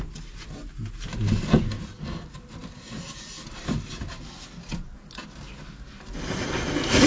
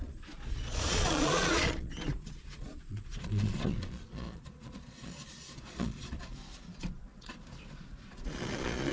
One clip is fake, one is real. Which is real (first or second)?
first